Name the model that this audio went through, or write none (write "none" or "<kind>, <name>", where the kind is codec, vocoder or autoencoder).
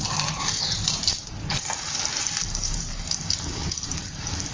vocoder, BigVGAN v2